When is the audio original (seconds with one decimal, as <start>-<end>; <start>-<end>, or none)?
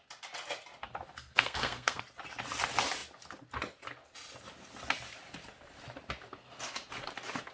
0.0-1.2; 2.0-7.5